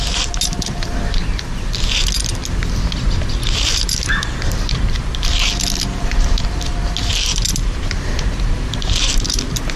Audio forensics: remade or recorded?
remade